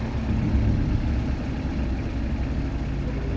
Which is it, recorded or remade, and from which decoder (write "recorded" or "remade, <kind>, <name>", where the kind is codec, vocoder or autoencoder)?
recorded